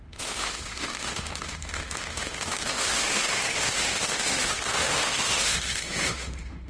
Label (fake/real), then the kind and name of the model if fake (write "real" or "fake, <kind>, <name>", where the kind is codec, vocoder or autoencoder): fake, autoencoder, DAC-VAE